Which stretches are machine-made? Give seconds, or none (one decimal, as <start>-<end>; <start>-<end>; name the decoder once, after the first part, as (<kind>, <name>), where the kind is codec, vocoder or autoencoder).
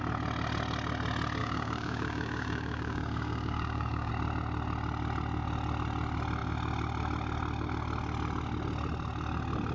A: 1.4-4.1 (codec, DAC)